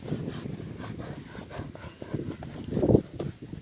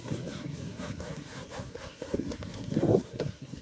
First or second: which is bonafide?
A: first